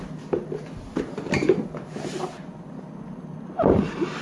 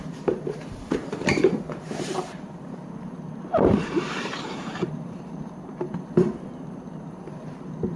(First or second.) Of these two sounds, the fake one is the second